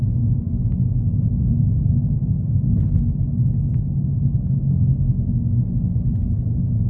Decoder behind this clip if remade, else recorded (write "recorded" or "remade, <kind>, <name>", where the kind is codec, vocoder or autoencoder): recorded